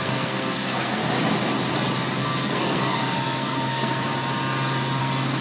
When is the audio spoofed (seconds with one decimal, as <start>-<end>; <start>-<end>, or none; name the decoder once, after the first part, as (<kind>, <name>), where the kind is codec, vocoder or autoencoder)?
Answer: 0.0-1.0 (codec, SNAC); 2.2-4.1; 5.0-5.4